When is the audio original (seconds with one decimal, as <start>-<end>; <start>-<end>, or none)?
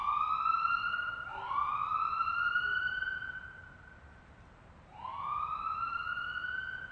0.0-6.9